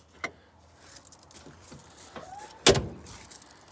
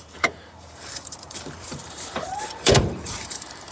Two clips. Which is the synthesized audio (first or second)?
second